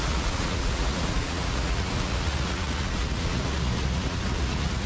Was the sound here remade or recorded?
remade